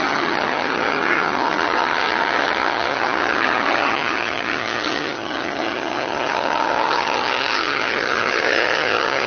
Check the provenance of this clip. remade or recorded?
remade